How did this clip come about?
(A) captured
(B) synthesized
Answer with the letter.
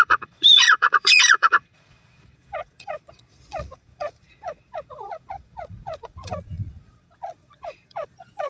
B